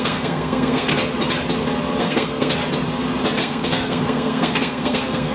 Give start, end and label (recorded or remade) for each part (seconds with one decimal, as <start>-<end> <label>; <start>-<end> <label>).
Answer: 0.0-0.9 remade; 0.9-2.0 recorded; 2.0-2.6 remade; 2.6-3.4 recorded; 3.4-5.3 remade